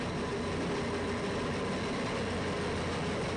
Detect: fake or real real